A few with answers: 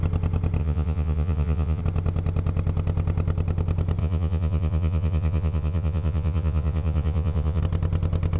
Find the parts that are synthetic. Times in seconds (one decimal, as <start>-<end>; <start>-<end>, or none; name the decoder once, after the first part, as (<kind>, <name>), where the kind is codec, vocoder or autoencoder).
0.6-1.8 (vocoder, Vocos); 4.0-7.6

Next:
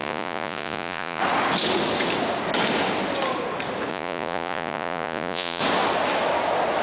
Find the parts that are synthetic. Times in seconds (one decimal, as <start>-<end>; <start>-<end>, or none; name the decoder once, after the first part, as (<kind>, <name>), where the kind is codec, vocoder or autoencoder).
0.0-1.2 (vocoder, Vocos); 3.9-5.6

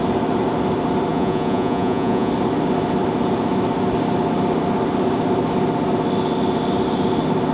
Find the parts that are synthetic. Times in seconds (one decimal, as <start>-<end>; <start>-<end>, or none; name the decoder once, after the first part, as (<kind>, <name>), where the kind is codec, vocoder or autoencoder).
1.1-2.3 (vocoder, Vocos)